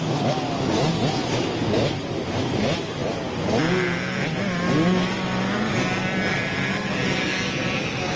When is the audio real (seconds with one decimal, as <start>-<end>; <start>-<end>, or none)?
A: 0.0-8.2